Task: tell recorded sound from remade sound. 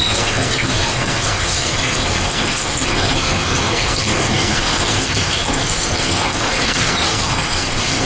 remade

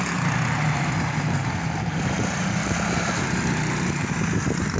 recorded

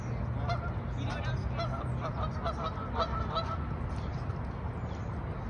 recorded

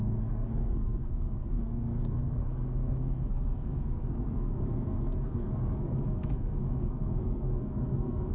remade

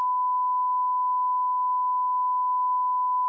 remade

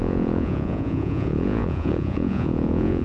remade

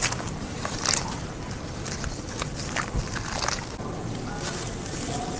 recorded